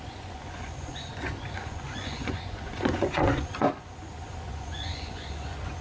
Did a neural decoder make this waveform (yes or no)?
yes